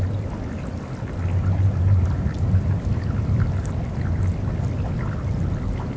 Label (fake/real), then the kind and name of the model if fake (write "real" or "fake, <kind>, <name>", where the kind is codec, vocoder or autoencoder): real